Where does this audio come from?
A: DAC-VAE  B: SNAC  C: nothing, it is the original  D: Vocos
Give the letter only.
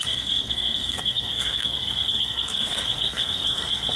B